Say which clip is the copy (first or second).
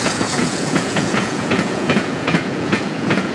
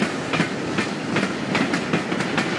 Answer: first